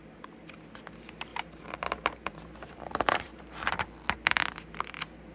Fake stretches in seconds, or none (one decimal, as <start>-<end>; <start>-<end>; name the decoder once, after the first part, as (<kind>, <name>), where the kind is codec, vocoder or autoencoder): 1.3-3.7 (vocoder, BigVGAN v2)